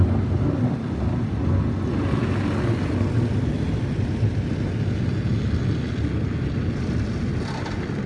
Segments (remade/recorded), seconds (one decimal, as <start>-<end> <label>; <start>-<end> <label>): 0.0-8.1 recorded